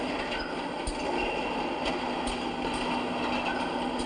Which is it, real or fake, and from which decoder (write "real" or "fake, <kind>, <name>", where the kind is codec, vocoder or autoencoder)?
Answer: real